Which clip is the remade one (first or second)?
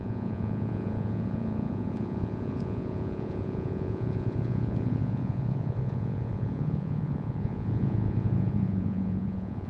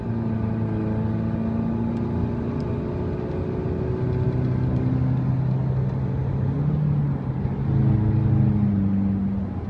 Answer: first